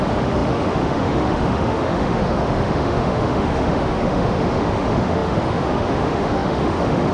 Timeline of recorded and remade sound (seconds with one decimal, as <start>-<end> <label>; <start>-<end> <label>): 0.0-7.1 remade